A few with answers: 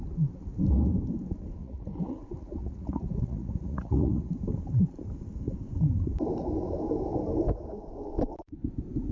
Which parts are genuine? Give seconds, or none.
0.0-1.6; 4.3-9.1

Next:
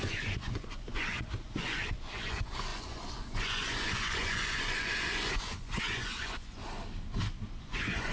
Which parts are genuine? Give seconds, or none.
6.6-7.6

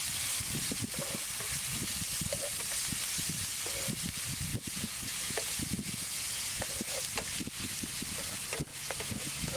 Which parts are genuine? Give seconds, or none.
0.0-4.5; 6.7-8.7